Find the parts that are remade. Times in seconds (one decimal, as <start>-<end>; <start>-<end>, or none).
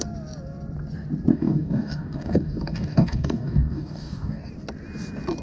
1.3-4.5